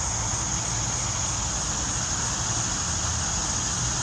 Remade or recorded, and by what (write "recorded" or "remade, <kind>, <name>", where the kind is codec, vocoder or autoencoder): recorded